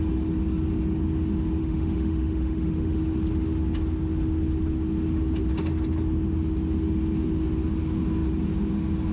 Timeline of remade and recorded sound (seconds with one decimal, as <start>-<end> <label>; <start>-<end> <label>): 0.0-1.6 recorded; 1.6-3.0 remade; 3.0-9.1 recorded